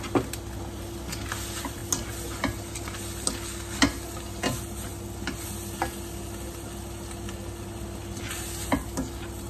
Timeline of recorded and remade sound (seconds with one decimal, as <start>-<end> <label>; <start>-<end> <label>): 0.0-9.5 recorded